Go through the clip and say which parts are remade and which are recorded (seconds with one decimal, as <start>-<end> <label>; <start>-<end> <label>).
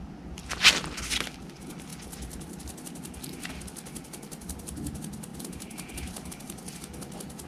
0.0-5.3 recorded; 5.3-6.3 remade; 6.3-7.5 recorded